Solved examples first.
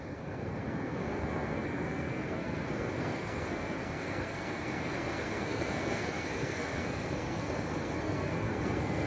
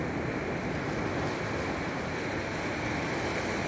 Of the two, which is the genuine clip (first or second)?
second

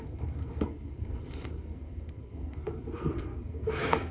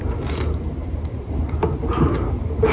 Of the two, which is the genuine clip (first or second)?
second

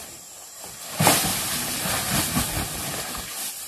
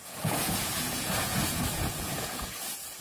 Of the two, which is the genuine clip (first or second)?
first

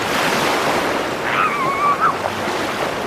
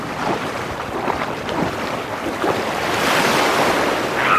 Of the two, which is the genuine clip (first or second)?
first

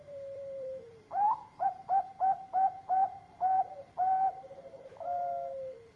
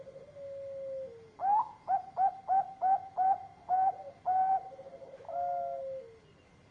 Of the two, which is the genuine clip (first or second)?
second